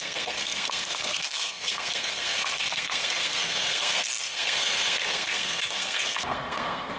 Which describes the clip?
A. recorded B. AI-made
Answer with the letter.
B